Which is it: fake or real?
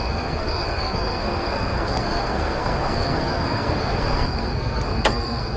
fake